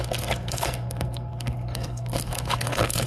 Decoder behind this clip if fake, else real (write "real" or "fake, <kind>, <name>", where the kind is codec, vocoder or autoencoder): fake, codec, SNAC